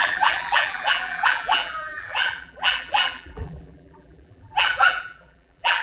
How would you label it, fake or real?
fake